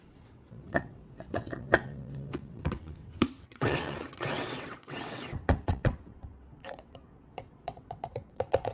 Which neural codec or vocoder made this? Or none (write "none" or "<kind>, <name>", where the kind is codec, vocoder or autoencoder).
vocoder, WaveNeXt